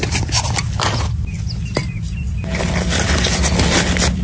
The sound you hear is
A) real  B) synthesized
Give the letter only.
A